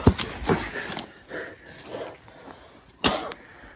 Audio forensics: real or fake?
real